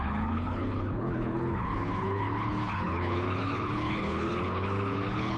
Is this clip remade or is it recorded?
remade